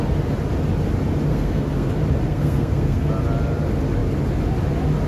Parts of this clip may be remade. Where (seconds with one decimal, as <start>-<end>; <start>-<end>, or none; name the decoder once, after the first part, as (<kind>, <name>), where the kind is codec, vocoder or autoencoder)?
1.3-1.9 (codec, SNAC); 2.3-3.1